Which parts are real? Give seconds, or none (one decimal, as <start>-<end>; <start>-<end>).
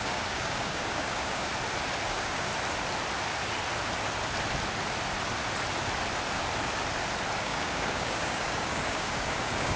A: 1.5-2.1; 2.5-7.4